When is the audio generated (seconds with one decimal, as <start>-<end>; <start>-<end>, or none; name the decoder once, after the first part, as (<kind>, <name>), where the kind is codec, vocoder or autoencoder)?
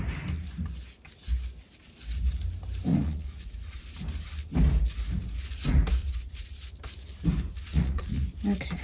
2.9-3.8 (vocoder, Vocos); 6.0-6.7; 7.7-8.2